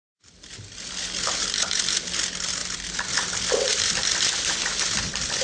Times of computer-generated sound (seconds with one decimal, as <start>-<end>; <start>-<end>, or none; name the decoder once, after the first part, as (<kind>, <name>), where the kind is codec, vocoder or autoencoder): none